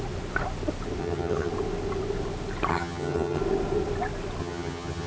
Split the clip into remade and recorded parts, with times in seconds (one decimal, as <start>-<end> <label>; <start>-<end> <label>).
0.0-1.0 recorded; 1.0-1.5 remade; 1.5-2.7 recorded; 2.7-3.4 remade; 3.4-4.4 recorded; 4.4-5.1 remade